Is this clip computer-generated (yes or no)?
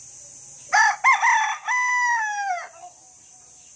no